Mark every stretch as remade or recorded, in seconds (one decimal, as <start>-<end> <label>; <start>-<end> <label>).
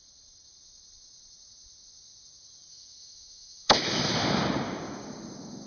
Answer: 0.0-2.7 recorded; 2.7-4.1 remade; 4.1-5.7 recorded